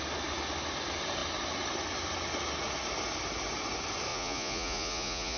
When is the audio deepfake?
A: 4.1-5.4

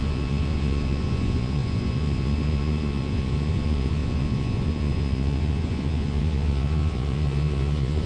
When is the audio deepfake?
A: 0.0-8.1